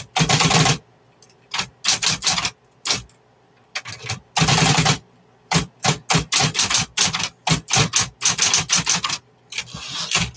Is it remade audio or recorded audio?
recorded